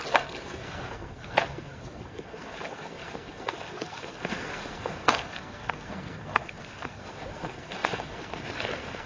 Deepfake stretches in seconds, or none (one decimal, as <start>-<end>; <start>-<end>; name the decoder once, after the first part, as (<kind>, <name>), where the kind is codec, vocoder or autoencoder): 0.0-9.1 (codec, SNAC)